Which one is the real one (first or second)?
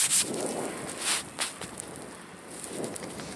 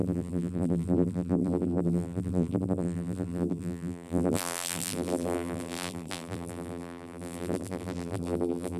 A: first